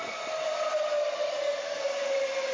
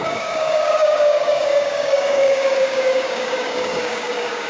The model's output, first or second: second